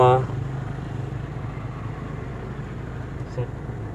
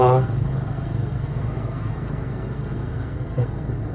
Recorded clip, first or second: first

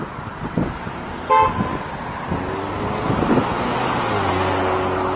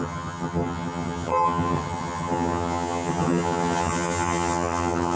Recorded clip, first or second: first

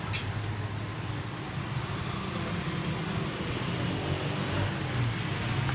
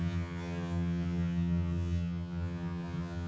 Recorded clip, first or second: first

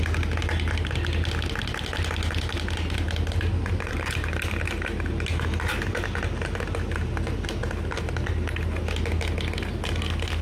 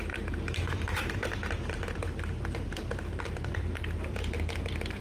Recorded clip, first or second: first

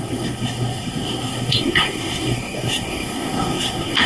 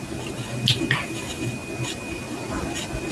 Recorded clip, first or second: second